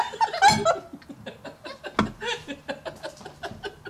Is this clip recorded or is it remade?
recorded